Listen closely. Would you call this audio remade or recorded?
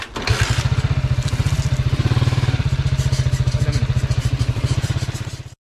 remade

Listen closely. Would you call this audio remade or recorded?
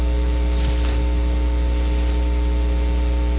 recorded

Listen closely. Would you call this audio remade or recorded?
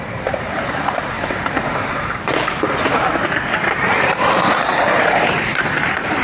remade